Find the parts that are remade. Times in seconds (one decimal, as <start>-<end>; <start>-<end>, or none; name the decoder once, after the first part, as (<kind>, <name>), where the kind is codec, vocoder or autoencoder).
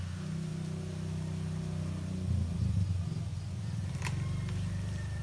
3.3-3.9 (vocoder, Vocos)